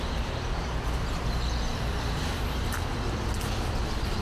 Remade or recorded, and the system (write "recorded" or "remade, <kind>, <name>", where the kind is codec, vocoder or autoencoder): recorded